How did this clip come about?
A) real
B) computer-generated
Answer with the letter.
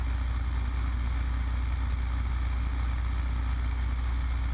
A